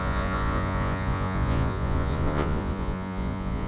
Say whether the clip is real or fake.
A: fake